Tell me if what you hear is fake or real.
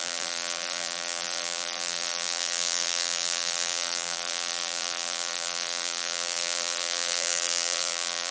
fake